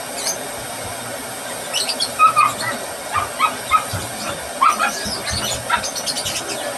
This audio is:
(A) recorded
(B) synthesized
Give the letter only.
A